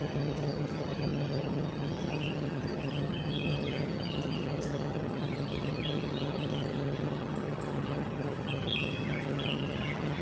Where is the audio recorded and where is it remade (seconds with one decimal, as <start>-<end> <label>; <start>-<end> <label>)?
0.0-10.2 remade